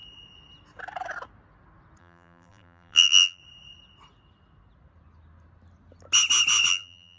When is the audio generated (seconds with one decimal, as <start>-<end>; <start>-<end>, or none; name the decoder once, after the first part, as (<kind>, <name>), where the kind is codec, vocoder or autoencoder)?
2.0-3.4 (vocoder, BigVGAN v2); 6.7-7.2